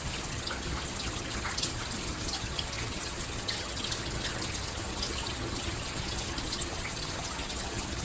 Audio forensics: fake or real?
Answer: fake